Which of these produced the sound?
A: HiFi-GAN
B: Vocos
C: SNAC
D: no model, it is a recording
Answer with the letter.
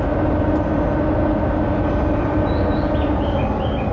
D